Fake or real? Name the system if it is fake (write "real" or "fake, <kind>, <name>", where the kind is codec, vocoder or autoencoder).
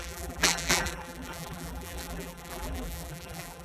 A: fake, vocoder, BigVGAN v2